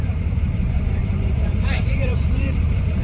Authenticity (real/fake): fake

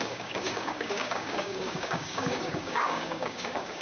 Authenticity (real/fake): fake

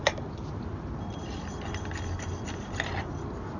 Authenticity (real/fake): real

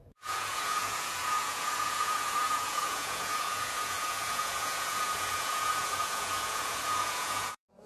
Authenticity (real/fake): fake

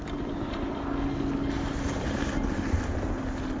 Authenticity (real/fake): real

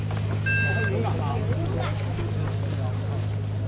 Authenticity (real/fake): real